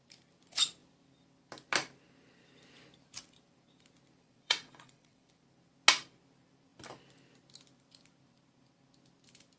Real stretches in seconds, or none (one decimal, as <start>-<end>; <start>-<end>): 0.0-4.2; 5.3-9.6